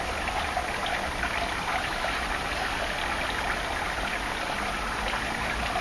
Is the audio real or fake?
real